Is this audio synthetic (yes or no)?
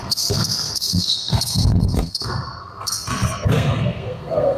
yes